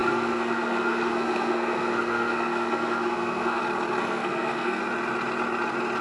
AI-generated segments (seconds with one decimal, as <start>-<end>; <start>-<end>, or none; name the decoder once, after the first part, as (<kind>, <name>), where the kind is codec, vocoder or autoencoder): 0.0-3.6 (codec, SNAC); 4.0-4.8